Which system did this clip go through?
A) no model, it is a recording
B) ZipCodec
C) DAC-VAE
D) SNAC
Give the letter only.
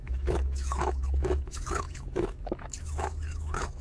C